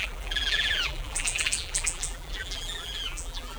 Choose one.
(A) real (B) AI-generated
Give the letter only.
B